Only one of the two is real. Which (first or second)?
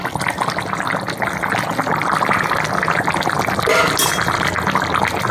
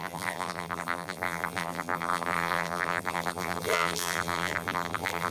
first